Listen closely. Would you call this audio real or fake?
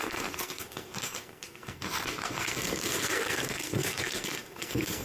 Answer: fake